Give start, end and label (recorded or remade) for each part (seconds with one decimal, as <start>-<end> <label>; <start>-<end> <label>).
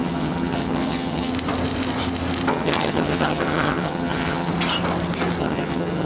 0.0-1.3 remade; 1.3-2.5 recorded; 2.5-4.5 remade; 4.5-5.4 recorded; 5.4-6.1 remade